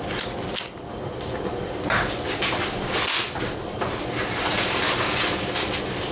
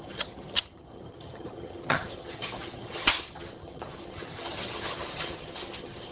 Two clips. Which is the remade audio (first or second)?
second